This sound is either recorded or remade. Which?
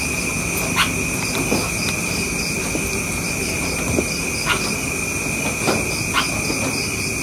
recorded